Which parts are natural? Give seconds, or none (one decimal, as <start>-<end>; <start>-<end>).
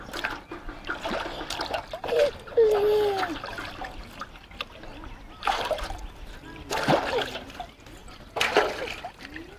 0.0-9.6